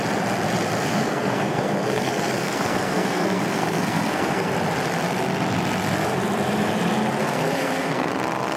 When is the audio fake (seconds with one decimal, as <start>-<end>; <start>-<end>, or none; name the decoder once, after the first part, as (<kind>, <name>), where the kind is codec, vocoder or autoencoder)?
0.9-4.5 (codec, SNAC); 7.2-8.1